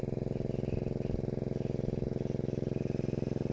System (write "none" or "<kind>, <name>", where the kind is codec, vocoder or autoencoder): none